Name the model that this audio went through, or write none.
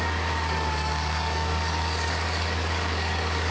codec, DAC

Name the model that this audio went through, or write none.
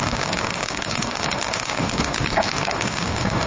codec, DAC